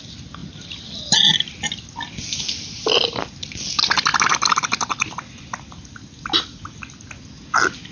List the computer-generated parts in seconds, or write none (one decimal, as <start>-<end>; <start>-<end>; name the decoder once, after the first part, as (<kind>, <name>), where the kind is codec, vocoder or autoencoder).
none